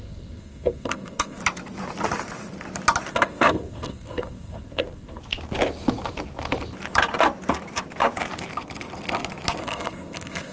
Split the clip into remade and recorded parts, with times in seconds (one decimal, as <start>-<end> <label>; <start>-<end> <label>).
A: 0.0-1.4 remade; 1.4-3.1 recorded; 3.1-5.2 remade; 5.2-9.6 recorded; 9.6-10.5 remade